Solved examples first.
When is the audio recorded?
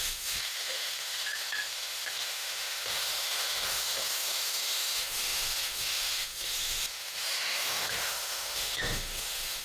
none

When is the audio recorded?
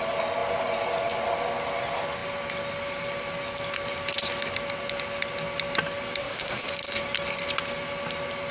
0.0-6.2; 6.7-8.5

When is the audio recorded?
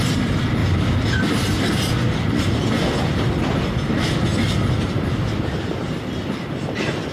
0.0-7.1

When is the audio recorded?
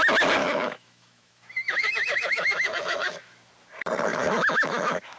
0.0-0.4; 3.5-4.1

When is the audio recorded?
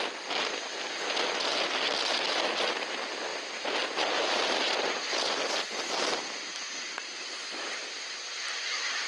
0.0-9.1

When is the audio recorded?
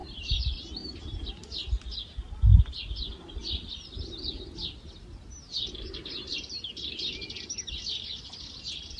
0.0-9.0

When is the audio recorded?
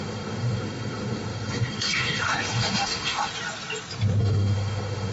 3.3-4.2